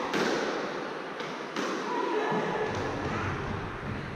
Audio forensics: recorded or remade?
recorded